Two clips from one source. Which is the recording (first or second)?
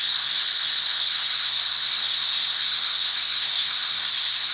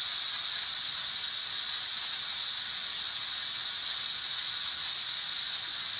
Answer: second